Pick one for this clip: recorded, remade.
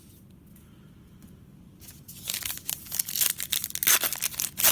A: recorded